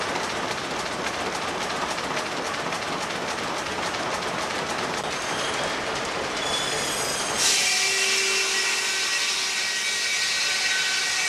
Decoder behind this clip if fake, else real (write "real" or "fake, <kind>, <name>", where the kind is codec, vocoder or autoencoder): real